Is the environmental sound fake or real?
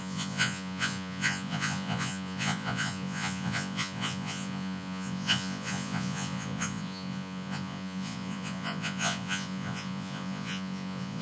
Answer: fake